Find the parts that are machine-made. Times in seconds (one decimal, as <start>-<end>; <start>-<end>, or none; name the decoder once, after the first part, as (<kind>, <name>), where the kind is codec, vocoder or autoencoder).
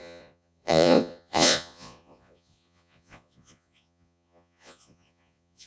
0.0-5.7 (vocoder, Vocos)